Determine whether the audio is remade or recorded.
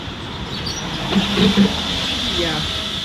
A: recorded